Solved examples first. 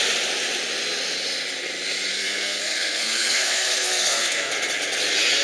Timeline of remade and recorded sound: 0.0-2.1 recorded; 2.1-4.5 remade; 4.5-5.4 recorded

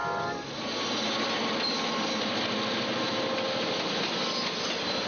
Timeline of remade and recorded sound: 0.0-5.1 recorded

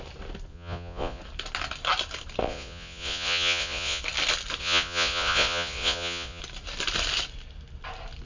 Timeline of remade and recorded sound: 0.0-0.5 recorded; 0.5-1.2 remade; 1.2-2.4 recorded; 2.4-4.0 remade; 4.0-4.6 recorded; 4.6-6.4 remade; 6.4-8.3 recorded

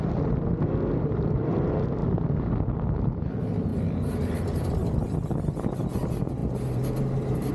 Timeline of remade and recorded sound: 0.0-3.7 recorded; 3.7-5.0 remade; 5.0-6.4 recorded; 6.4-7.5 remade

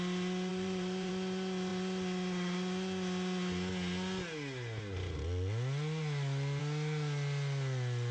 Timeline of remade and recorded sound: 0.0-0.5 recorded; 0.5-1.1 remade; 1.1-8.1 recorded

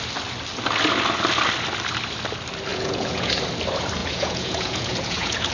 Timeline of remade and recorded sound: 0.0-2.7 recorded; 2.7-3.3 remade; 3.3-4.0 recorded; 4.0-5.5 remade

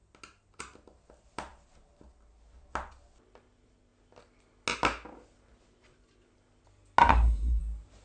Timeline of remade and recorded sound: 0.0-7.1 recorded; 7.1-7.6 remade; 7.6-8.0 recorded

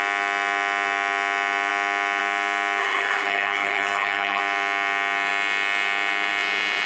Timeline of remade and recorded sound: 0.0-2.8 recorded; 2.8-4.4 remade; 4.4-6.9 recorded